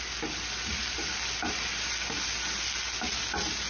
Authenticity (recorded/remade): recorded